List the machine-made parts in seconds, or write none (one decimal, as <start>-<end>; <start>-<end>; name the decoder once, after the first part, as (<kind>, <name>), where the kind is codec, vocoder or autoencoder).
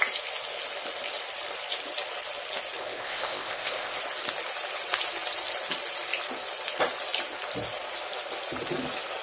2.8-4.0 (codec, ZipCodec)